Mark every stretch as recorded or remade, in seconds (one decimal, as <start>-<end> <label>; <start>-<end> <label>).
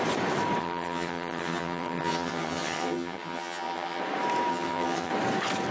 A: 0.0-0.6 recorded; 0.6-4.0 remade; 4.0-4.5 recorded; 4.5-5.1 remade; 5.1-5.7 recorded